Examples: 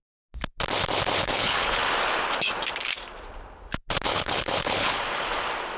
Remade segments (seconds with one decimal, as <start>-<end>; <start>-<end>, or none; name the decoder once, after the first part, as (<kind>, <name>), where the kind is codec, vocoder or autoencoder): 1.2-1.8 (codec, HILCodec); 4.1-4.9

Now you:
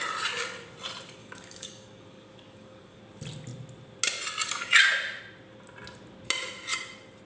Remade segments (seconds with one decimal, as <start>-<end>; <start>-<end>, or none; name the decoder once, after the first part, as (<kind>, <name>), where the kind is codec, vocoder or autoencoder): 1.2-3.0 (codec, DAC)

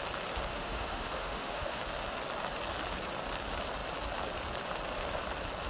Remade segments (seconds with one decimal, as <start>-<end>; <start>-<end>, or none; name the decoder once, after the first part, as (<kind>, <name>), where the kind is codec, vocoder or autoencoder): 0.5-1.8 (autoencoder, DAC-VAE)

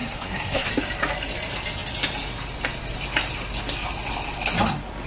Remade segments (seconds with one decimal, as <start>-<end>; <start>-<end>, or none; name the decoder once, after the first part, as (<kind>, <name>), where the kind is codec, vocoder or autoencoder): 0.0-0.7 (codec, SNAC)

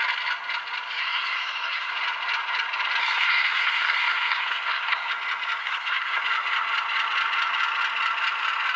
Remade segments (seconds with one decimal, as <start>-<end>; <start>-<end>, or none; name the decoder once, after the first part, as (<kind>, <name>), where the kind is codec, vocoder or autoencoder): 1.0-1.9 (codec, SNAC); 3.0-5.1; 5.6-6.2

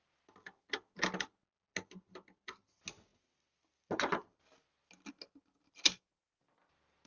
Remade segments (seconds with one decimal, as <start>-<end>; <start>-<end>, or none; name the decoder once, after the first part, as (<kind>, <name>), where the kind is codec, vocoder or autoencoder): none